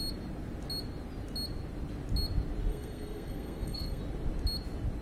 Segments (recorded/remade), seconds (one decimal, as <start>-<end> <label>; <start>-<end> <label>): 0.0-2.7 recorded; 2.7-4.0 remade; 4.0-5.0 recorded